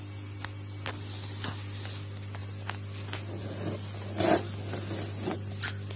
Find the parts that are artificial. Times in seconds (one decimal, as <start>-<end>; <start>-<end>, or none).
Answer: none